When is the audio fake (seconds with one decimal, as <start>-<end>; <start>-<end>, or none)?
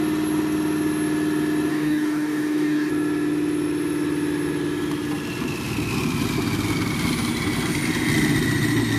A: 1.7-2.9